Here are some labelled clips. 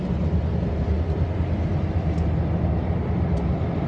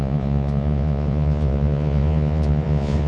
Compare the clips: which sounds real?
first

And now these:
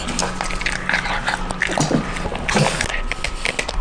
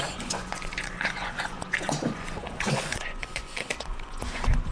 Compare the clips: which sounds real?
first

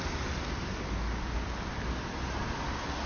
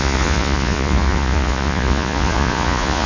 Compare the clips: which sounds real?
first